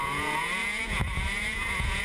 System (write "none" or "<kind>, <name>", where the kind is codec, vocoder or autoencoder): vocoder, Vocos